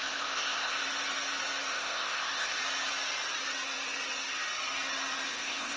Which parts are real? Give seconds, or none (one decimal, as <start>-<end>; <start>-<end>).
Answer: 0.8-1.7; 2.6-5.3